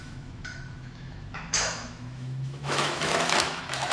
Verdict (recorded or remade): remade